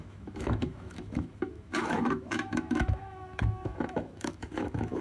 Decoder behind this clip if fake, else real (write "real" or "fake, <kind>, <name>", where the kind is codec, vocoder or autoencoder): fake, autoencoder, DAC-VAE